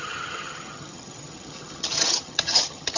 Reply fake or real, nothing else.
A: fake